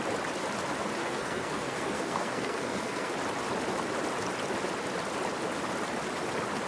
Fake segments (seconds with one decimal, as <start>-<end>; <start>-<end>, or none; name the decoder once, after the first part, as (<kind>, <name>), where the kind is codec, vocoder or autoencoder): 1.0-3.1 (codec, SNAC)